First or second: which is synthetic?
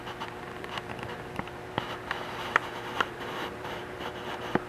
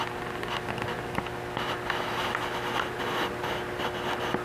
first